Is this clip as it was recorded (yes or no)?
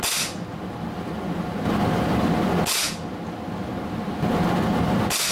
yes